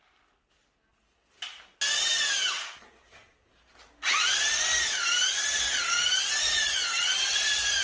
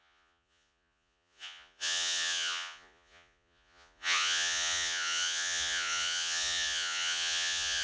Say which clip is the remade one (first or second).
second